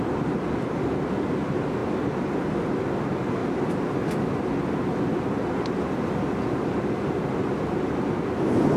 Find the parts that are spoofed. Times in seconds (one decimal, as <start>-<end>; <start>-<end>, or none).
none